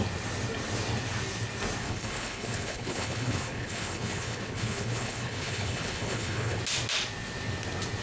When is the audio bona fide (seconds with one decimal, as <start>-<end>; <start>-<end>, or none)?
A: 0.0-1.8; 6.6-8.0